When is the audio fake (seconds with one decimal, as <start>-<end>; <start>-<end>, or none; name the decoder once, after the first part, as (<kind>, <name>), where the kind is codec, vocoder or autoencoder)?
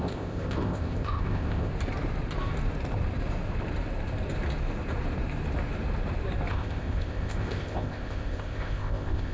0.0-1.7 (codec, ZipCodec); 6.5-9.3